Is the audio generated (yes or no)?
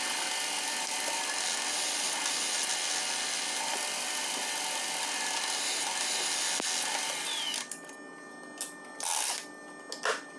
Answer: no